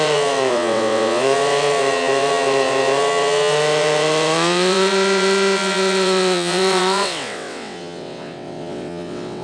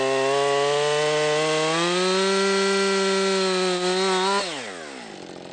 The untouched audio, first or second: second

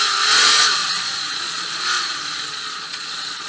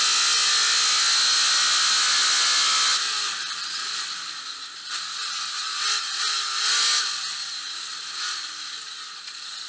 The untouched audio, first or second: second